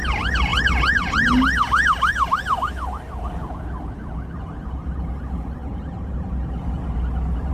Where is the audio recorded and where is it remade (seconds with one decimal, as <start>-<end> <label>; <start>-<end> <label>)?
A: 0.0-7.5 recorded